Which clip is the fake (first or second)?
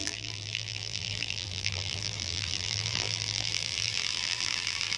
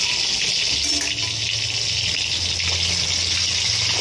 first